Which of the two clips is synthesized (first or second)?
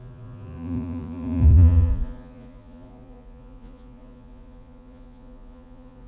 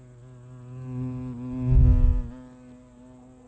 first